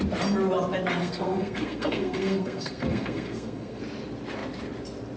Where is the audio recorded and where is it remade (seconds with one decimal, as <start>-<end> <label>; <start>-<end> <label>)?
0.0-1.0 recorded; 1.0-3.8 remade; 3.8-5.2 recorded